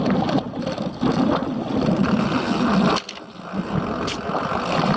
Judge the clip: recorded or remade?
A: recorded